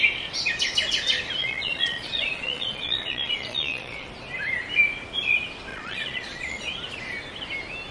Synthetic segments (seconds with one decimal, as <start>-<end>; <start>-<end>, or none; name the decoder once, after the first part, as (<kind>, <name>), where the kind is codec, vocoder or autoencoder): 1.4-4.1 (vocoder, Vocos); 5.7-6.7